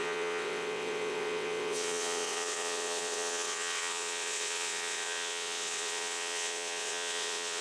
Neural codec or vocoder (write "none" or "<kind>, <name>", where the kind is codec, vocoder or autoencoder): vocoder, WaveNeXt